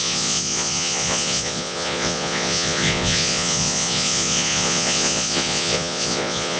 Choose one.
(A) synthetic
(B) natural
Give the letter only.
A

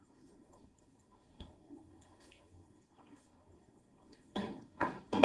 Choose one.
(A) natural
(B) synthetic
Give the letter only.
B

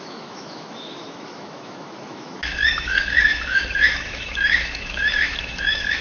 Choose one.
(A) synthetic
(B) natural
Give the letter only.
A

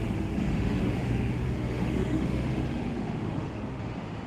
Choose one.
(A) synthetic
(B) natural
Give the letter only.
A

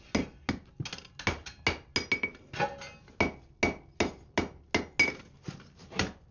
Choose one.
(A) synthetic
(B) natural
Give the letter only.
B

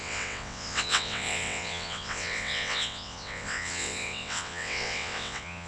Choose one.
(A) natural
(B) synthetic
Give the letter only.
B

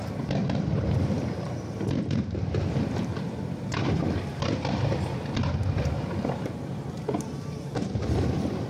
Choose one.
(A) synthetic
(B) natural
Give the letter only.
B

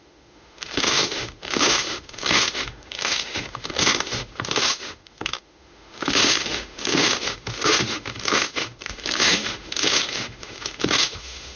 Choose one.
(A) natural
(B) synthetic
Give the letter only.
B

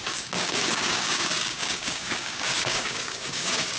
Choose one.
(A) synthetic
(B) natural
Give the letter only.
A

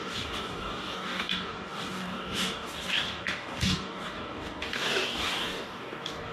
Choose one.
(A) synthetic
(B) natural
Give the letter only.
A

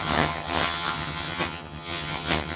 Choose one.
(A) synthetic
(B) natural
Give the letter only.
A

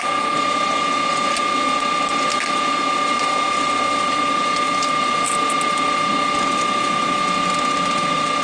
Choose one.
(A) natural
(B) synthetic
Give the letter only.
A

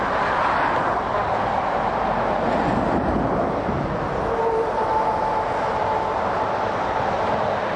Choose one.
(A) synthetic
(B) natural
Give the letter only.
B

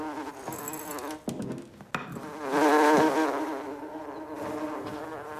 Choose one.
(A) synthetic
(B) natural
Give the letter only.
B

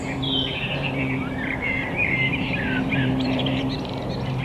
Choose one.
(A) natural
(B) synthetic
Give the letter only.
B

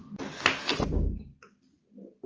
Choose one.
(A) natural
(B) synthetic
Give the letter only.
B